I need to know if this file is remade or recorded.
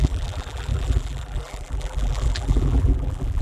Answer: remade